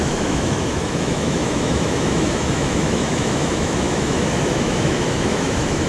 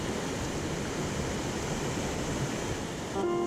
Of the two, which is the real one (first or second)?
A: second